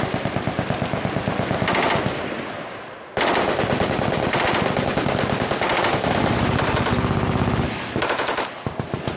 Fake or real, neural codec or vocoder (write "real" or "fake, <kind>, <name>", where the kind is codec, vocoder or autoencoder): real